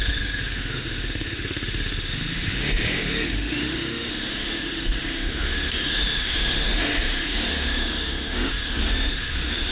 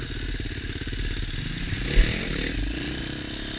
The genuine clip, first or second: second